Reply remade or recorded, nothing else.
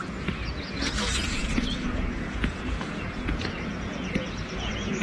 remade